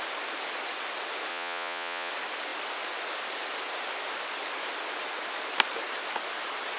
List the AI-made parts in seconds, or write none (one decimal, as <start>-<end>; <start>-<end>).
1.3-2.1